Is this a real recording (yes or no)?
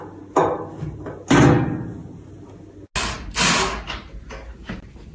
yes